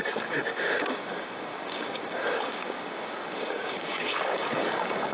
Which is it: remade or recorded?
remade